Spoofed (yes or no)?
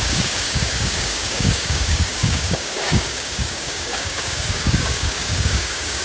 yes